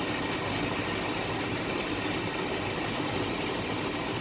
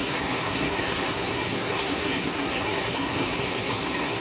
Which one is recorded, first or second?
first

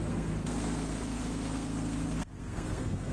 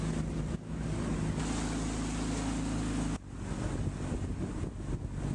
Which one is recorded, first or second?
second